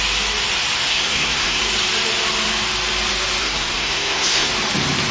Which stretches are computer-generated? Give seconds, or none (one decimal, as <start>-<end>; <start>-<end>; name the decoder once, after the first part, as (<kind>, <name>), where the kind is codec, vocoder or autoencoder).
0.9-1.6 (codec, SNAC); 3.4-4.5